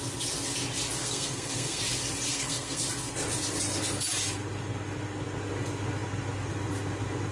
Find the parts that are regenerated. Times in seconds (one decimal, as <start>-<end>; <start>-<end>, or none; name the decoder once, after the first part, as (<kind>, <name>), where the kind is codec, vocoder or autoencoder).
1.0-1.8 (codec, SNAC); 2.3-2.8